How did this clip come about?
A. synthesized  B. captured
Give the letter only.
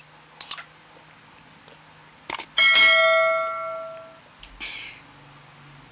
B